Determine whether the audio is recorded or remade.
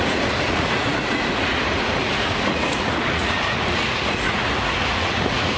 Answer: remade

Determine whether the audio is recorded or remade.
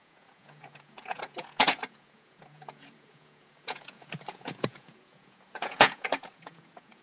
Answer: remade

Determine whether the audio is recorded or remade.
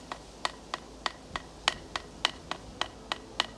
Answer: recorded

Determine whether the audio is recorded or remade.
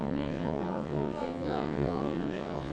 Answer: remade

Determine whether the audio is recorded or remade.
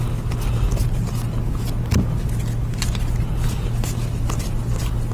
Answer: recorded